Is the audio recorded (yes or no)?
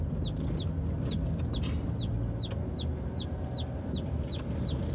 yes